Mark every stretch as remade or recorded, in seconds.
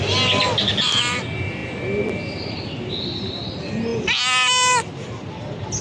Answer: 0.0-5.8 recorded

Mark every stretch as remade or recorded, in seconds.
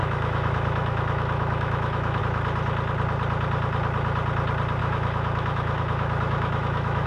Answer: 0.0-2.2 remade; 2.2-4.8 recorded; 4.8-7.1 remade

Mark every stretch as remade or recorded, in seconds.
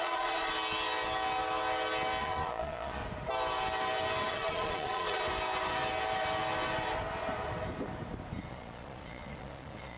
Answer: 0.0-0.5 remade; 0.5-2.2 recorded; 2.2-3.0 remade; 3.0-4.3 recorded; 4.3-5.3 remade; 5.3-8.5 recorded; 8.5-10.0 remade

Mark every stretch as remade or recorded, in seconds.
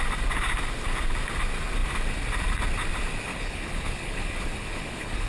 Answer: 0.0-3.3 recorded; 3.3-5.3 remade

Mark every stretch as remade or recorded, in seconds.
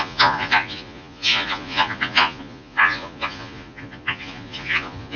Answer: 0.0-5.2 remade